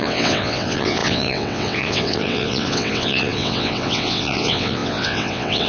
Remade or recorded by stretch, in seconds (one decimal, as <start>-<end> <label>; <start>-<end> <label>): 0.0-5.7 remade